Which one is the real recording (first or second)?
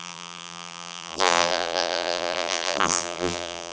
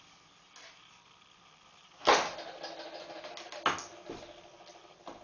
second